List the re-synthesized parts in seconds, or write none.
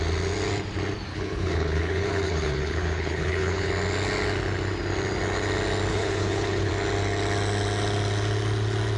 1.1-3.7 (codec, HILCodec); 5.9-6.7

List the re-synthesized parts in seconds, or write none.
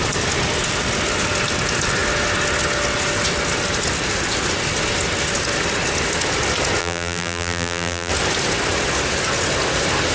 6.8-8.1 (vocoder, BigVGAN v2)